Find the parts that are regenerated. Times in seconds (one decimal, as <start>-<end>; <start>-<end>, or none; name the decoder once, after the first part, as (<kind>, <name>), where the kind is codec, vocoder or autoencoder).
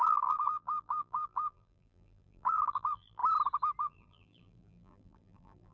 0.0-3.2 (vocoder, BigVGAN v2); 3.8-5.7